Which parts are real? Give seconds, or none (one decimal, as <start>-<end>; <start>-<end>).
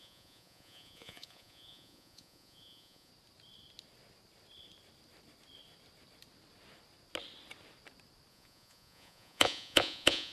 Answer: 3.1-8.3